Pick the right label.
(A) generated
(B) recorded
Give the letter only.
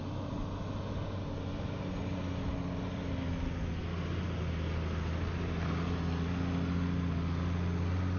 B